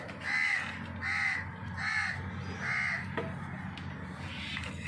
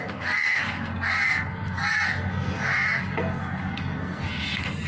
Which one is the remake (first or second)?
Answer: second